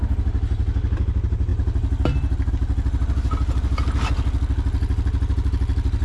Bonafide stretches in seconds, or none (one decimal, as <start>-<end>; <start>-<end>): 0.0-6.0